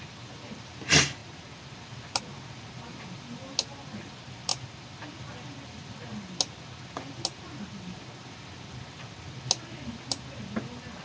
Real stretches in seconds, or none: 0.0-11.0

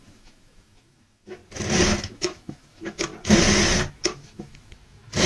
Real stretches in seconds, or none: 1.4-2.0; 3.1-3.9

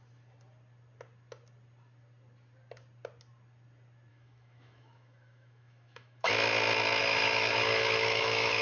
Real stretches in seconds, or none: 0.0-4.1; 6.3-7.0